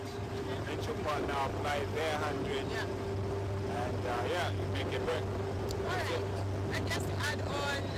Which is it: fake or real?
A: real